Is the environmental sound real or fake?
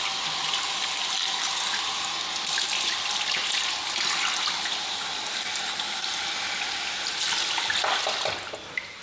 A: real